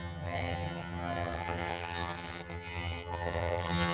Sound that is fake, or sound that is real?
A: fake